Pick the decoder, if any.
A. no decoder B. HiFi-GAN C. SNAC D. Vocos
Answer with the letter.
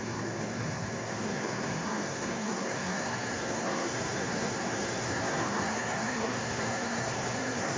C